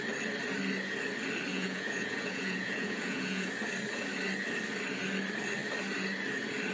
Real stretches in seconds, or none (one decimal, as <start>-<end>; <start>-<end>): 0.0-1.5; 3.5-6.7